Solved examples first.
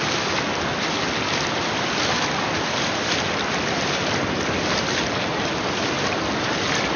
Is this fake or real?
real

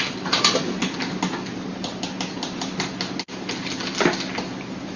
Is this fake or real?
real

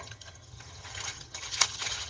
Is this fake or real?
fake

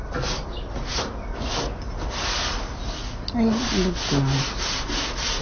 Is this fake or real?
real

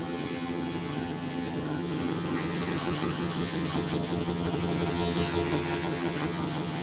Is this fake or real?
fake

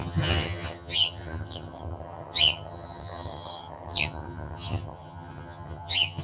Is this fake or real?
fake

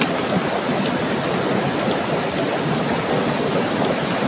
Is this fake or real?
real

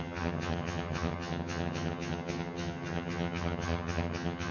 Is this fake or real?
fake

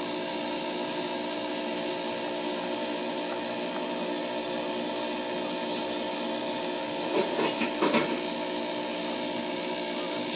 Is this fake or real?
real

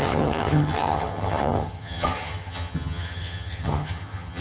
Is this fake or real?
fake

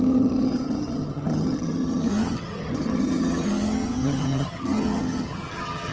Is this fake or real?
fake